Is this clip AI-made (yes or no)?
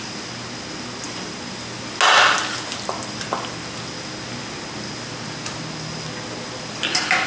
no